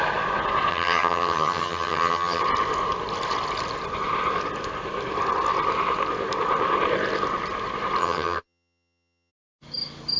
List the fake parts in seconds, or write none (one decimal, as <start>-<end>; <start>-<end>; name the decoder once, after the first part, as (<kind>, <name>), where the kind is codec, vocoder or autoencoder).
0.7-2.4 (vocoder, HiFi-GAN); 8.0-9.3